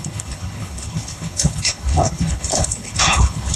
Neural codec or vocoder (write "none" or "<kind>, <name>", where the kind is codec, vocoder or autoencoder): codec, HILCodec